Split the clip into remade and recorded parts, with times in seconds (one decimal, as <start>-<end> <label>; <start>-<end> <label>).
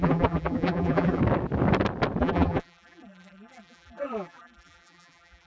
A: 0.0-1.2 remade; 1.2-2.2 recorded; 2.2-5.5 remade